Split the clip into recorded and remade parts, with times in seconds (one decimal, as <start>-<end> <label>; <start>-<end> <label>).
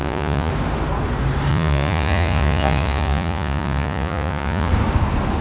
0.0-0.5 remade; 0.5-1.5 recorded; 1.5-4.7 remade; 4.7-5.4 recorded